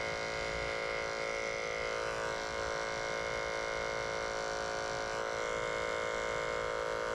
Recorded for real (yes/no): yes